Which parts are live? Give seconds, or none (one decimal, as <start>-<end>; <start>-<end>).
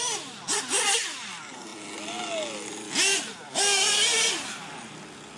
0.0-5.4